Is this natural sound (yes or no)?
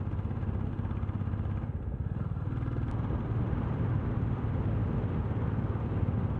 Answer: yes